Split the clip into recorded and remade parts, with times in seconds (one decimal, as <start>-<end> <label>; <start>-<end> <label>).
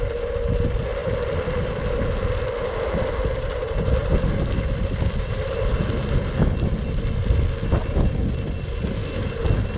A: 0.0-1.0 recorded; 1.0-1.9 remade; 1.9-4.0 recorded; 4.0-5.7 remade; 5.7-9.0 recorded; 9.0-9.8 remade